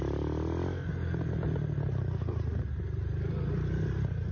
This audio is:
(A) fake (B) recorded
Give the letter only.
B